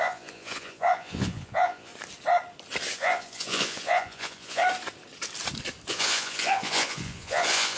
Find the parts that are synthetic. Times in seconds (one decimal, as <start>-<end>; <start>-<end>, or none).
0.0-1.9; 3.0-4.6; 5.9-7.8